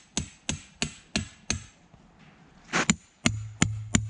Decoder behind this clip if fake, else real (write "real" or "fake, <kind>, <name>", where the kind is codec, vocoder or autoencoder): real